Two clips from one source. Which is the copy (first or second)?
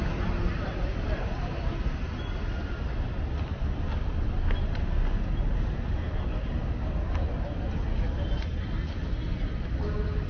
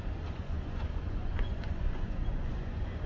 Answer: second